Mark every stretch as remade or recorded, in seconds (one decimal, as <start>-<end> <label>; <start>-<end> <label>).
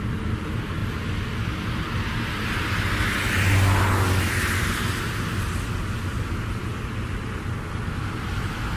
0.0-8.8 recorded